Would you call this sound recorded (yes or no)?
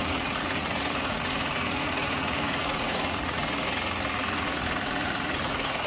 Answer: no